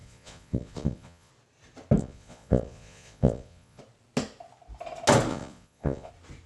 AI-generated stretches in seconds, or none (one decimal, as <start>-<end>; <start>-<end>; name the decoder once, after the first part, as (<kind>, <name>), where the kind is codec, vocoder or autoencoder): 0.0-1.3 (vocoder, Vocos); 2.0-3.8; 5.3-6.1